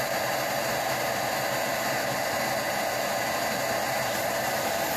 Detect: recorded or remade recorded